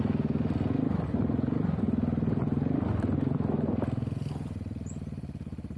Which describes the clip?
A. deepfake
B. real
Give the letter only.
B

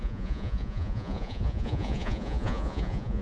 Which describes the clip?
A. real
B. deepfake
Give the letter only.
B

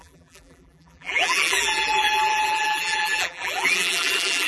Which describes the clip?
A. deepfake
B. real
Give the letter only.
A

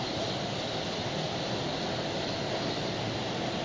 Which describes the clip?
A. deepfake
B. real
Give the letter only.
B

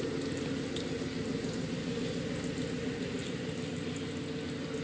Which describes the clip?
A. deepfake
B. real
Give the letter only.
B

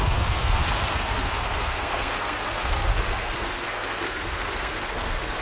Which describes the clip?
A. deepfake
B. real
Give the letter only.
A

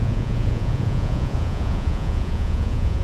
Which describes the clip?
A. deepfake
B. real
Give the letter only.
A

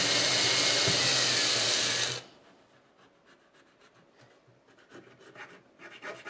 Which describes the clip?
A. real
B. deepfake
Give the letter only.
A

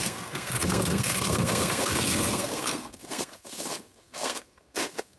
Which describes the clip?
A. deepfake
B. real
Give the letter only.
A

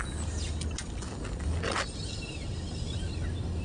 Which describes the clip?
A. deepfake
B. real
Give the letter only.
B